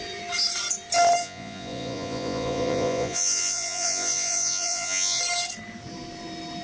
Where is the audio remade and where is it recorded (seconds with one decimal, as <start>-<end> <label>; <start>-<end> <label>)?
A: 0.0-1.2 recorded; 1.2-5.2 remade; 5.2-6.6 recorded